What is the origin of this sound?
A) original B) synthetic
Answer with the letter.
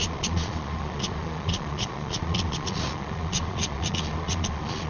B